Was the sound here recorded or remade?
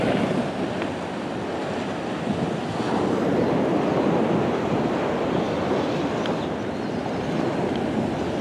recorded